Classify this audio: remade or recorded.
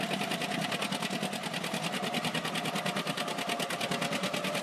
recorded